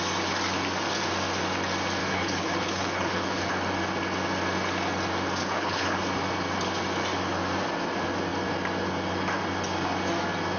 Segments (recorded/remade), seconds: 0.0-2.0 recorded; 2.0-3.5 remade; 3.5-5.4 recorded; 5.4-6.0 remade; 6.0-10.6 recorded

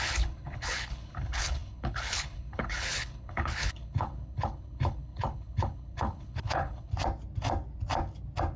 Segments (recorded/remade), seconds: 0.0-6.9 remade; 6.9-8.6 recorded

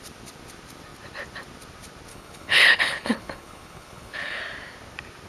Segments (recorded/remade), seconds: 0.0-2.1 recorded; 2.1-4.4 remade; 4.4-5.3 recorded

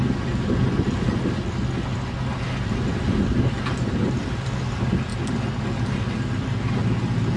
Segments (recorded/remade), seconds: 0.0-7.4 recorded

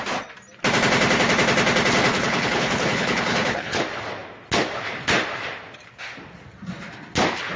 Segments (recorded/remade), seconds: 0.0-2.1 recorded; 2.1-3.8 remade; 3.8-7.6 recorded

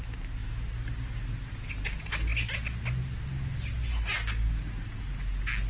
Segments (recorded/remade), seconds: 0.0-5.7 recorded

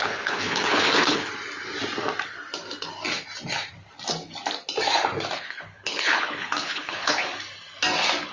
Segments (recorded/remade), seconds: 0.0-1.3 remade; 1.3-5.4 recorded; 5.4-7.2 remade; 7.2-8.3 recorded